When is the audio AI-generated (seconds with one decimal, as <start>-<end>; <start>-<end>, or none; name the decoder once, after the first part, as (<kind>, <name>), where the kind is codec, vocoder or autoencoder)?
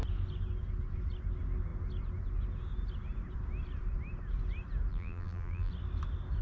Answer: 4.9-5.7 (vocoder, BigVGAN v2)